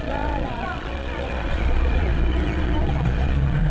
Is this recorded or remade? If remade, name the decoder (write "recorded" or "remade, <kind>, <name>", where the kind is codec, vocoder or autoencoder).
remade, vocoder, Vocos